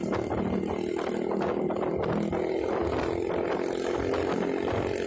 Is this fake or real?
real